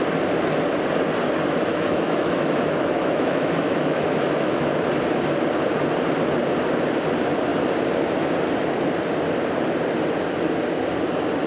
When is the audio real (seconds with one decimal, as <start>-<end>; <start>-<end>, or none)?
0.0-1.7; 4.9-11.5